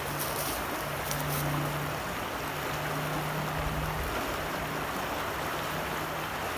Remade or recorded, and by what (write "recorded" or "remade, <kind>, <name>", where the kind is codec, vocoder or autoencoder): recorded